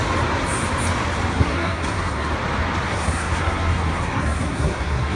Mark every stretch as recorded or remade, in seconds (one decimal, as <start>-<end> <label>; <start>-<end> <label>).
0.0-1.3 recorded; 1.3-2.3 remade; 2.3-2.9 recorded; 2.9-5.2 remade